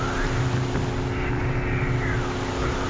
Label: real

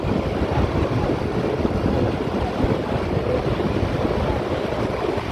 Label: real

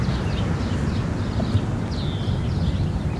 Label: real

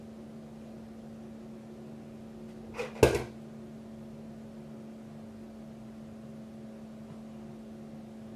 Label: real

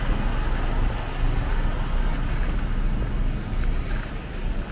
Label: real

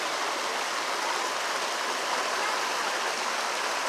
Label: real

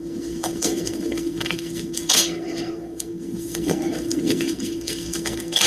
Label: fake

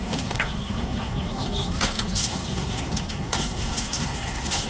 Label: fake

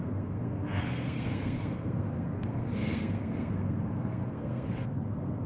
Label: fake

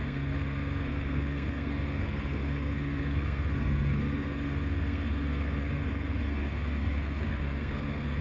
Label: fake